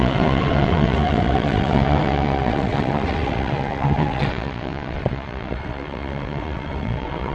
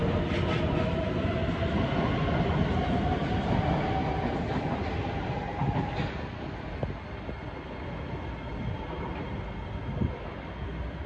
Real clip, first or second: second